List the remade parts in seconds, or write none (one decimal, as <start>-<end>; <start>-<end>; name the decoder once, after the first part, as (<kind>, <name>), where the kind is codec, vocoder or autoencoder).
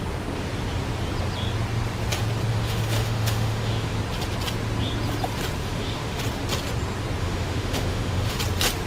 2.5-4.0 (autoencoder, DAC-VAE); 5.6-6.2; 7.2-8.4